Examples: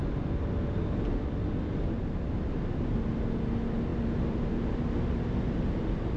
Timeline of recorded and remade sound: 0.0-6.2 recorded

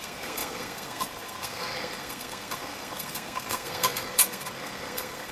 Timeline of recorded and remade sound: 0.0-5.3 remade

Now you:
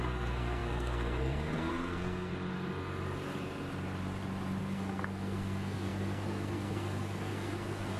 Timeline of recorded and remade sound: 0.0-2.3 remade; 2.3-4.6 recorded; 4.6-8.0 remade

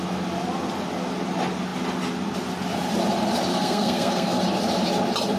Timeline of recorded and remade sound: 0.0-3.5 recorded; 3.5-4.4 remade; 4.4-5.4 recorded

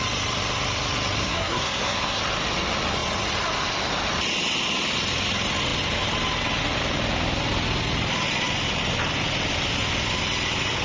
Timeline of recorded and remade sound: 0.0-1.2 recorded; 1.2-2.2 remade; 2.2-10.8 recorded

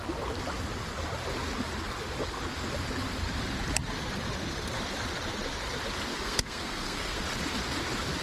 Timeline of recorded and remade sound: 0.0-6.1 recorded; 6.1-7.2 remade; 7.2-8.2 recorded

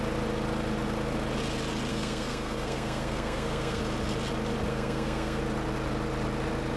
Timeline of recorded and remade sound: 0.0-1.9 recorded; 1.9-3.8 remade; 3.8-4.7 recorded; 4.7-5.4 remade; 5.4-6.8 recorded